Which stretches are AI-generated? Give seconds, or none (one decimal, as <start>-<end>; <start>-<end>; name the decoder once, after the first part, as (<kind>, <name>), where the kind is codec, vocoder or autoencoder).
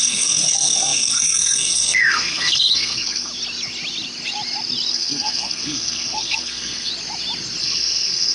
0.0-3.3 (codec, SNAC); 4.9-6.9; 7.6-8.3